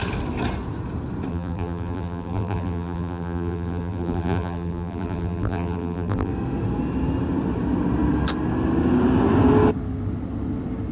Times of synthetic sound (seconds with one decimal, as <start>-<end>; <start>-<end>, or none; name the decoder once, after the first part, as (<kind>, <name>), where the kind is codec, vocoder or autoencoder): 1.3-6.3 (vocoder, BigVGAN v2)